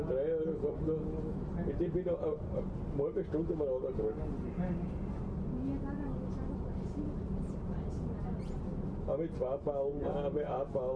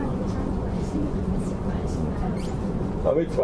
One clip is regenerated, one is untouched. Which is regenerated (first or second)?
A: second